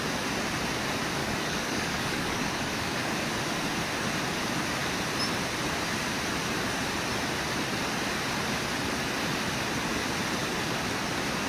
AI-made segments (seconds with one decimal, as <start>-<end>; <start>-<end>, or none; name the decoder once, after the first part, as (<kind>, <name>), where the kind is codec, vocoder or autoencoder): 1.2-3.1 (codec, DAC)